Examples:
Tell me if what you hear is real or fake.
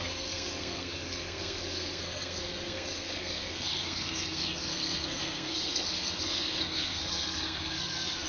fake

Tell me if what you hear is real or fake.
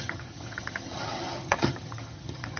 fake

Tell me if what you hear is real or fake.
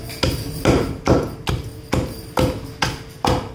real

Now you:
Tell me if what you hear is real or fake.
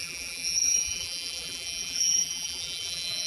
fake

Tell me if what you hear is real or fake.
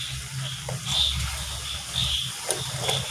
real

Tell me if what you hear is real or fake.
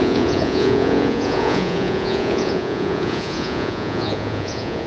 fake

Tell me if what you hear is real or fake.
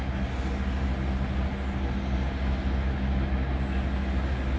real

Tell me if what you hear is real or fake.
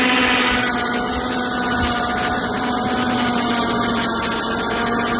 real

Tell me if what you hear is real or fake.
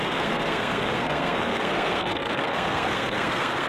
fake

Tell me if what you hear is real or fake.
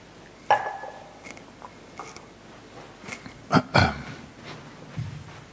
real